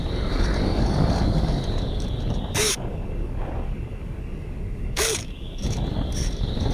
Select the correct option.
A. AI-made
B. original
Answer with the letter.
A